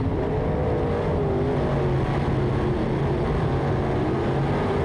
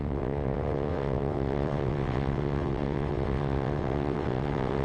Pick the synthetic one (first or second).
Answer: second